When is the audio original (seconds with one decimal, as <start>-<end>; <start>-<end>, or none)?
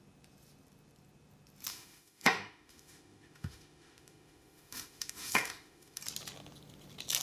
0.0-1.7; 6.0-7.2